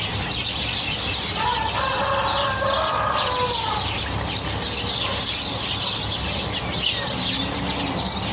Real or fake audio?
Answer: real